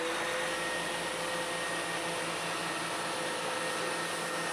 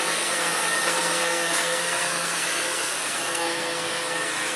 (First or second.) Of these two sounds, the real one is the first